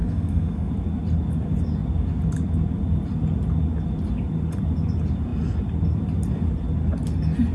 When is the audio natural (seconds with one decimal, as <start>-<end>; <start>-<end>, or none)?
0.7-7.5